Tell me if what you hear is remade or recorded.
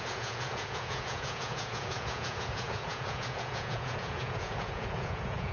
remade